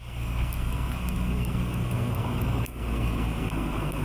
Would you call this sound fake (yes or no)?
yes